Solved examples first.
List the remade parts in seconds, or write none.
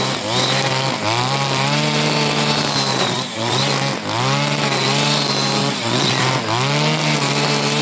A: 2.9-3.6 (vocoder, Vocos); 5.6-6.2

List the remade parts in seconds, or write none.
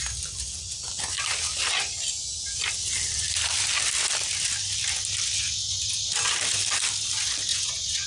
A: 7.5-8.1 (vocoder, Vocos)